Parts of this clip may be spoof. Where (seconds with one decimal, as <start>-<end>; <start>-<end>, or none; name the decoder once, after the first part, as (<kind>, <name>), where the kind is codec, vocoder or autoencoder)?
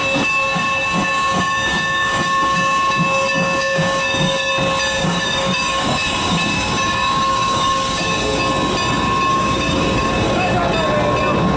0.0-4.5 (codec, DAC); 5.0-8.4; 9.3-10.5